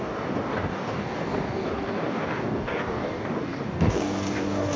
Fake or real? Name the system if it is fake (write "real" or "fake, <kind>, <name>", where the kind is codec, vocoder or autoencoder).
fake, codec, DAC